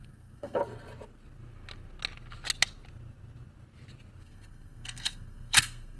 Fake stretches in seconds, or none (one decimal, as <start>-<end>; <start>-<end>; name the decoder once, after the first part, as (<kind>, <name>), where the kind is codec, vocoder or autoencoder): 0.0-0.6 (codec, SNAC); 4.2-6.0